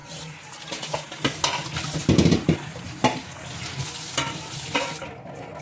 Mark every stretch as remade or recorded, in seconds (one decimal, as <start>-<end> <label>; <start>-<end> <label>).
0.0-0.7 remade; 0.7-2.0 recorded; 2.0-3.2 remade; 3.2-5.6 recorded